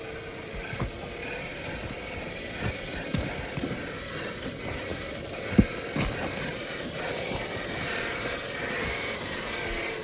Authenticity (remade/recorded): recorded